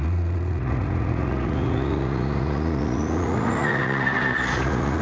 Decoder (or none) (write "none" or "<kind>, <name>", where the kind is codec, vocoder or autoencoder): vocoder, Vocos